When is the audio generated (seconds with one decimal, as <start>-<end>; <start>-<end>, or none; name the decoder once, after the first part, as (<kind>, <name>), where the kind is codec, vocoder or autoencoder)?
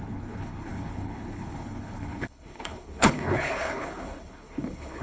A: 0.0-5.0 (codec, HILCodec)